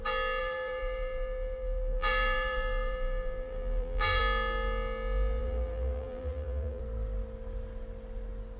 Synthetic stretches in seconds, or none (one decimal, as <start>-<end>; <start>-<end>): 0.4-4.2; 5.4-6.8